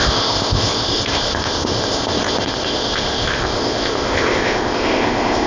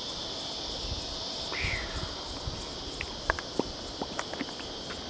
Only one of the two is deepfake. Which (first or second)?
first